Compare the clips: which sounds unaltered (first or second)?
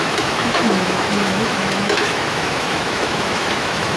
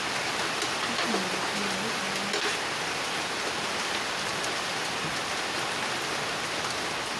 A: second